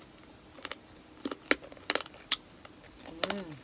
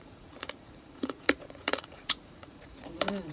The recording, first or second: first